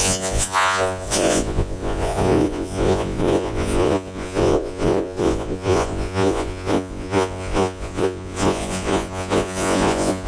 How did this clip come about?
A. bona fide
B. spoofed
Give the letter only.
B